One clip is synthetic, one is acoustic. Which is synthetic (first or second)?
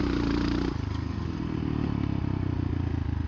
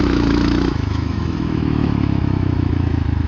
second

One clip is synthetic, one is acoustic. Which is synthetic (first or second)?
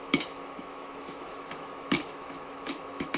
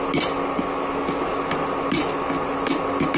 first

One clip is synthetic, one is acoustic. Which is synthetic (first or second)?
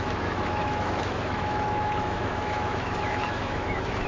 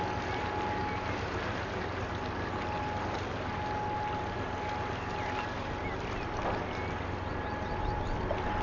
first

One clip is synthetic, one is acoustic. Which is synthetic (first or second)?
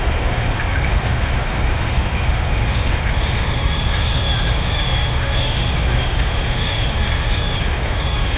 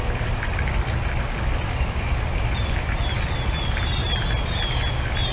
first